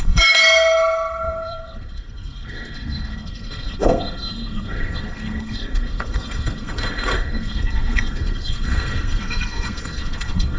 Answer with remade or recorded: remade